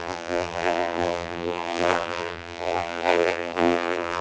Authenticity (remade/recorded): remade